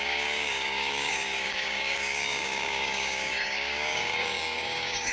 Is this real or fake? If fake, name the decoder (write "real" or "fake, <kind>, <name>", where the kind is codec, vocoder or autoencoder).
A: fake, codec, DAC